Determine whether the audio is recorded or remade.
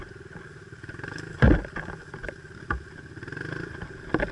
recorded